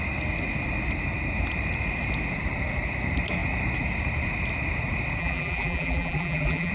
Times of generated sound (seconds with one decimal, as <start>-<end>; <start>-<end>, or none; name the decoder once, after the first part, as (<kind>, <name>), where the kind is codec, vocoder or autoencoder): 5.2-6.7 (vocoder, BigVGAN v2)